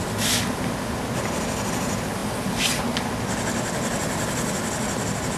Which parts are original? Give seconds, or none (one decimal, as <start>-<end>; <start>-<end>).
0.0-5.4